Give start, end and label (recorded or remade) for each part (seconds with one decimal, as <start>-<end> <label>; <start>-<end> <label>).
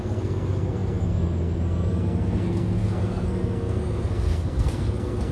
0.0-5.3 remade